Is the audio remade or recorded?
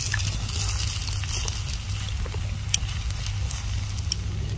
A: recorded